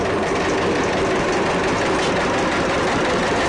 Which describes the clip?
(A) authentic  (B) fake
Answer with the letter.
A